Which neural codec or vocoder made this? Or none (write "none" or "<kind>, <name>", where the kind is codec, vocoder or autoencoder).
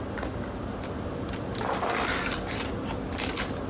none